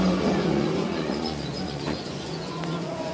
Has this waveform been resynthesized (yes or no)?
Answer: yes